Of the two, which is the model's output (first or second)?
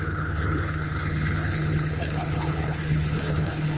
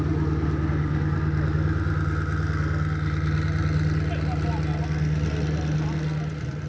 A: first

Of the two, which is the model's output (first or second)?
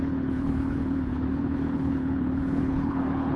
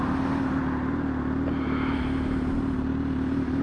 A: first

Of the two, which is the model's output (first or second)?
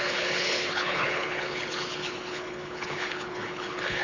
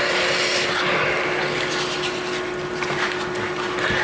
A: first